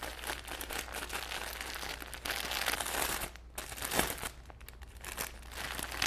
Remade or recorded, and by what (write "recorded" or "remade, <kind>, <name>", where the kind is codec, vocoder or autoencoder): recorded